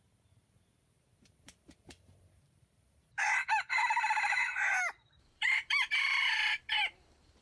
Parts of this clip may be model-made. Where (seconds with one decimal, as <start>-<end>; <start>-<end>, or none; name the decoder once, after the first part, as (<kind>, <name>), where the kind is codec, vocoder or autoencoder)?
0.0-4.4 (vocoder, BigVGAN v2); 5.2-7.4

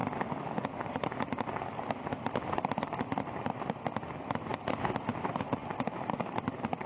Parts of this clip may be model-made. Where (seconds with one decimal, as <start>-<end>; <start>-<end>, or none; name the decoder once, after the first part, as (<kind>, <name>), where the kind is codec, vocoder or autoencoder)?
none

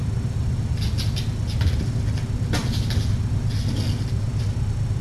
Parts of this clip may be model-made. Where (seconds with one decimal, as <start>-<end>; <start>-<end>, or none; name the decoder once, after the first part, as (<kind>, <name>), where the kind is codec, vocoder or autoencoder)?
none

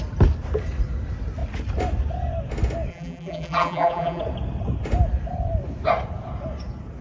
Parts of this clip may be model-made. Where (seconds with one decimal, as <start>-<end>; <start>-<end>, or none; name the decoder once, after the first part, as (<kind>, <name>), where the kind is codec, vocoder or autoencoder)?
2.9-4.2 (vocoder, BigVGAN v2)

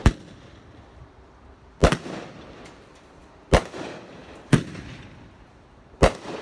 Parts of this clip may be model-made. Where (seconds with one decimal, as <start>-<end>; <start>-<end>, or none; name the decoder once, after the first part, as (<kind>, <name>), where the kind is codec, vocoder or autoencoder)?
0.0-6.4 (vocoder, BigVGAN v2)

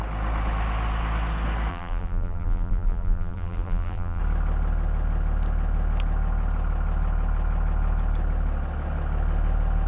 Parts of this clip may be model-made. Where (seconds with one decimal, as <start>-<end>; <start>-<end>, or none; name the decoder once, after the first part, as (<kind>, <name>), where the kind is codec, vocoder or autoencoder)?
1.7-4.2 (vocoder, BigVGAN v2)

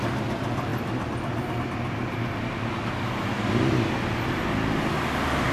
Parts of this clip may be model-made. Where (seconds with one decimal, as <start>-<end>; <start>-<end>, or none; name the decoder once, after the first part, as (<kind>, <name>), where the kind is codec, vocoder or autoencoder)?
none

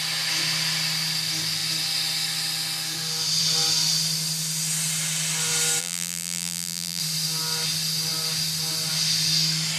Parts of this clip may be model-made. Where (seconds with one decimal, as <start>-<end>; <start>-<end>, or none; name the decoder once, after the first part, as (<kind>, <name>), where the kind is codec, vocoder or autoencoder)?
5.8-7.0 (vocoder, BigVGAN v2)